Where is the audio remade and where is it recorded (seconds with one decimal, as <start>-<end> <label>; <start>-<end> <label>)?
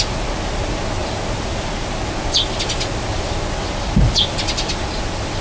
0.0-5.4 recorded